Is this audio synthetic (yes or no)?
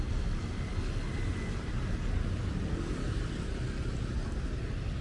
no